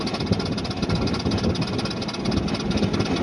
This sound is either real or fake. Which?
real